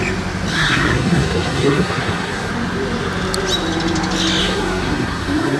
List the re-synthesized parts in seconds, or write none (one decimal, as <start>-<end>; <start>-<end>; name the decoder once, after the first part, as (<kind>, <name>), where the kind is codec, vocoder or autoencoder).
0.5-2.5 (codec, SNAC); 4.4-5.6

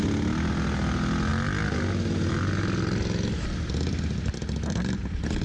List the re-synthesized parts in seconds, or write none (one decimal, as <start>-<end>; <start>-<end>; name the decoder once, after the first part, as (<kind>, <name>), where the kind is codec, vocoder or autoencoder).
none

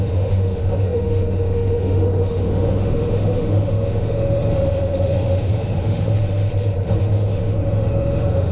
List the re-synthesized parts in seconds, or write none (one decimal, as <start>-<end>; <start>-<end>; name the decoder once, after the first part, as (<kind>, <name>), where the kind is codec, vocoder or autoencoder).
0.0-6.5 (autoencoder, DAC-VAE); 7.0-8.5

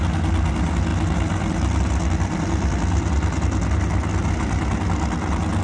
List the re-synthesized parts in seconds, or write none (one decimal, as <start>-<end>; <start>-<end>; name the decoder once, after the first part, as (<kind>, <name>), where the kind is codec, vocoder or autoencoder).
none

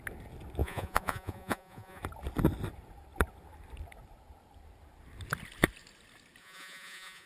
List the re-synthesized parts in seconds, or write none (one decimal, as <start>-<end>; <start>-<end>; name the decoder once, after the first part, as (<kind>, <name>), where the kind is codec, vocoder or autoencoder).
0.6-2.0 (vocoder, Vocos); 6.4-7.3